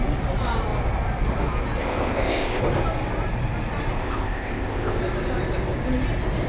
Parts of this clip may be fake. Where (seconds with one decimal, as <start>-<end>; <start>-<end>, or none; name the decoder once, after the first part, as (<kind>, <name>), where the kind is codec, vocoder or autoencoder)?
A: 1.8-2.6 (codec, ZipCodec); 4.0-5.0